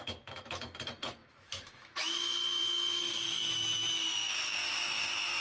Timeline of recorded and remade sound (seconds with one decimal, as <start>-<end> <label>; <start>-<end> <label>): 0.0-5.4 remade